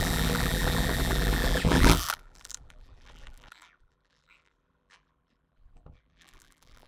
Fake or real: fake